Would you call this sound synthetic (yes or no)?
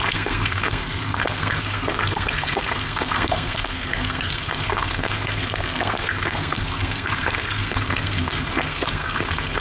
yes